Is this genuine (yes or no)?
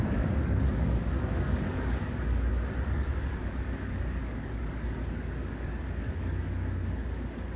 no